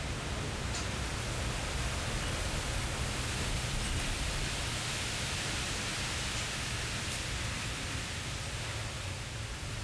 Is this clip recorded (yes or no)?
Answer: yes